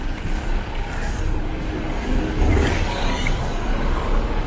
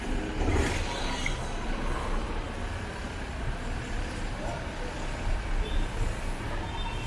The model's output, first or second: first